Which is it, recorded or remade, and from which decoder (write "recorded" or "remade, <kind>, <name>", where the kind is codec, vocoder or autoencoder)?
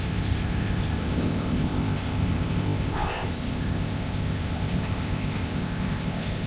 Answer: remade, codec, ZipCodec